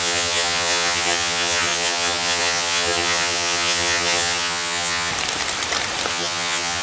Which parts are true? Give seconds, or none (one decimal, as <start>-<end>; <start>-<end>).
5.1-6.1